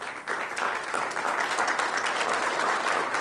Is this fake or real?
real